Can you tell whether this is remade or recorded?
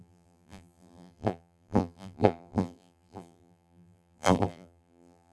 remade